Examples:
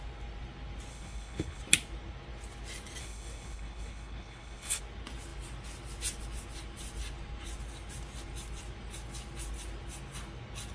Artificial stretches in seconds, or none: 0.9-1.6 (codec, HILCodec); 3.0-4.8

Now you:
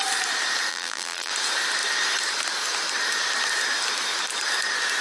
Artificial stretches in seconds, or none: 0.7-1.3 (vocoder, BigVGAN v2)

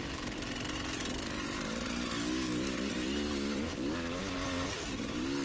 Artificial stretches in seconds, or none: none